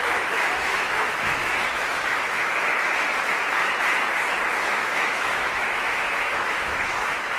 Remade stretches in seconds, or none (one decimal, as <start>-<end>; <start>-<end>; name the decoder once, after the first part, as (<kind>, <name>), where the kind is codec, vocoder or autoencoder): 0.0-2.7 (autoencoder, DAC-VAE); 4.7-7.4

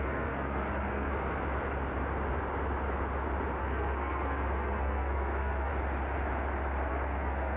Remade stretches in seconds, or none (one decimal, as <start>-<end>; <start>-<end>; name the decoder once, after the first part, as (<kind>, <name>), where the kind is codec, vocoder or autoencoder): 0.0-1.1 (codec, SNAC); 3.6-5.7; 6.9-7.6